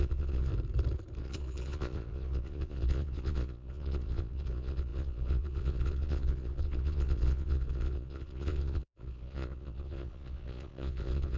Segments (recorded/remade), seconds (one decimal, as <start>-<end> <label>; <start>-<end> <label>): 0.0-0.5 remade; 0.5-1.2 recorded; 1.2-11.4 remade